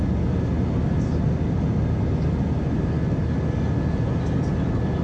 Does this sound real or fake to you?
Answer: real